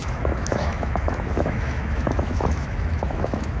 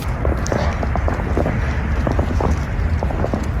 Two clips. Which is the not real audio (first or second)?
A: first